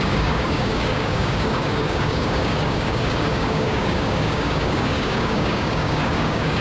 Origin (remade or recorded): remade